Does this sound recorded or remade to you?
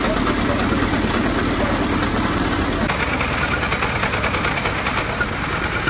recorded